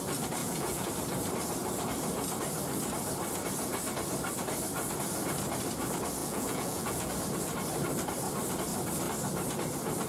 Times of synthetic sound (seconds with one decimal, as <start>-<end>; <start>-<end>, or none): 0.4-0.9; 6.2-7.1